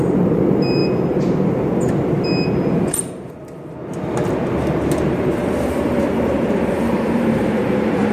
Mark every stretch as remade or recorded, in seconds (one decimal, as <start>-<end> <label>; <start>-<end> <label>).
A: 0.0-0.8 remade; 0.8-5.1 recorded; 5.1-8.1 remade